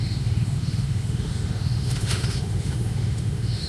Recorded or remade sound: remade